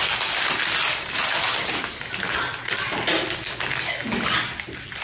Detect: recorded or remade recorded